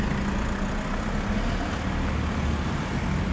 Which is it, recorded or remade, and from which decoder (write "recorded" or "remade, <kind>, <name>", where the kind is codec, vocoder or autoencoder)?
recorded